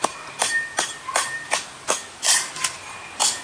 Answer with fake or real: real